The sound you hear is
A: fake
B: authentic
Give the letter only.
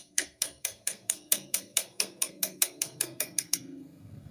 A